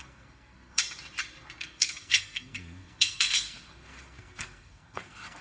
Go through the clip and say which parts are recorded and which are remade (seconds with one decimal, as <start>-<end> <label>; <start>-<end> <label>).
0.0-0.8 remade; 0.8-1.6 recorded; 1.6-5.4 remade